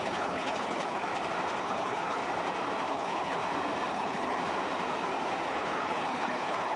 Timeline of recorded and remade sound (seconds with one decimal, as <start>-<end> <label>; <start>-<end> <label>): 0.0-1.1 remade; 1.1-1.6 recorded; 1.6-2.2 remade; 2.2-2.9 recorded; 2.9-3.4 remade; 3.4-3.9 recorded; 3.9-4.4 remade; 4.4-5.5 recorded; 5.5-6.8 remade